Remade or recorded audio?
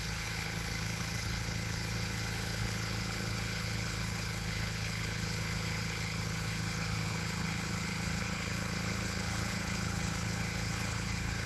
remade